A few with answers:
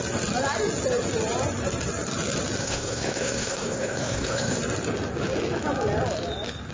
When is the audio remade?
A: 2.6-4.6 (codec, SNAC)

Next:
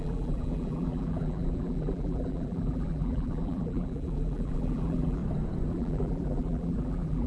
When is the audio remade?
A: 0.0-5.2 (vocoder, BigVGAN v2); 5.7-7.3

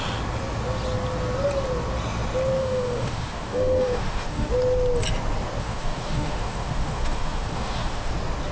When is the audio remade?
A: 2.6-4.5 (autoencoder, DAC-VAE); 5.6-8.1

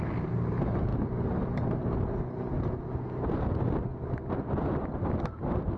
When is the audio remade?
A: none

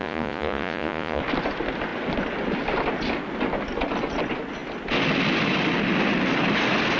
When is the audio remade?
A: 0.0-1.2 (vocoder, Vocos)

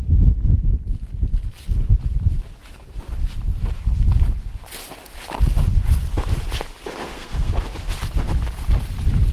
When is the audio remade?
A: 7.0-7.5 (codec, SNAC)

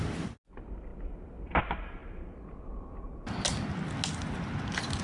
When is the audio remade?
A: none

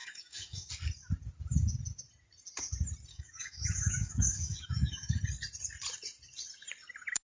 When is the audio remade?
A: 0.0-0.7 (autoencoder, DAC-VAE); 3.1-5.2